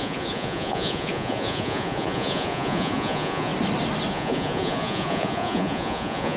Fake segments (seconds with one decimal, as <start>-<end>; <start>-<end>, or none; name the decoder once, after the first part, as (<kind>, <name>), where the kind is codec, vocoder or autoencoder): 0.0-3.5 (vocoder, Vocos); 4.1-6.4